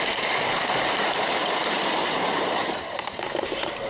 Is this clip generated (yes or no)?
yes